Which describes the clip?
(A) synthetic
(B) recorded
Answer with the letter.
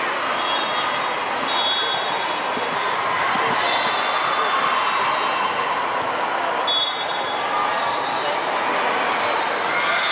B